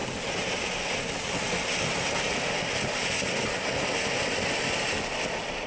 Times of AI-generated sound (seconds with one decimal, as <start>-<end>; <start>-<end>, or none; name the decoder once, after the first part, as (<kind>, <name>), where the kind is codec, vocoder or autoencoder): none